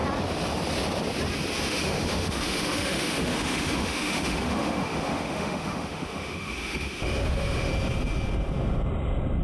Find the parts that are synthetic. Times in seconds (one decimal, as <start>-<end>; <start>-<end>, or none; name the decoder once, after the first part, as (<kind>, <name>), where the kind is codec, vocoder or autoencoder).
1.6-7.7 (autoencoder, DAC-VAE)